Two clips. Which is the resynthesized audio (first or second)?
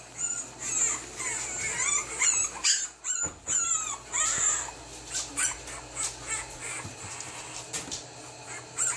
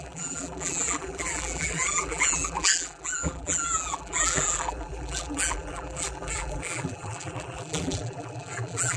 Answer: second